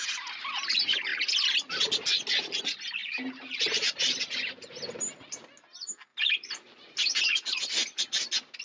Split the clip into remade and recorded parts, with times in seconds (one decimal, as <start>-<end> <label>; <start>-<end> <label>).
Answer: 0.0-3.0 recorded; 3.0-4.2 remade; 4.2-6.1 recorded; 6.1-7.2 remade; 7.2-8.6 recorded